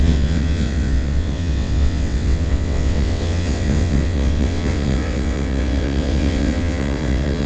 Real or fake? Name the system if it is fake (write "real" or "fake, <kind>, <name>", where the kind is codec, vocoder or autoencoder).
fake, vocoder, WaveNeXt